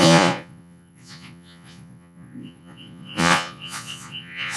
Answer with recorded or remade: remade